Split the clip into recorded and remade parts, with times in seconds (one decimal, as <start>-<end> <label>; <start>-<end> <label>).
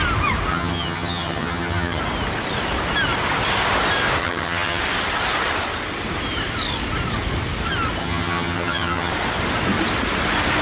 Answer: 0.0-0.5 recorded; 0.5-2.0 remade; 2.0-4.2 recorded; 4.2-4.8 remade; 4.8-8.0 recorded; 8.0-9.1 remade; 9.1-10.6 recorded